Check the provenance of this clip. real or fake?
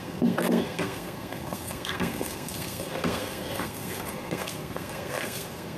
fake